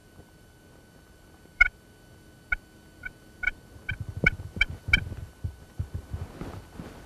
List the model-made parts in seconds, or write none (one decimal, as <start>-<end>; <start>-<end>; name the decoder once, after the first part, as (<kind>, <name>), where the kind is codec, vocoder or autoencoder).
0.0-1.9 (vocoder, BigVGAN v2); 3.5-4.7; 5.2-6.1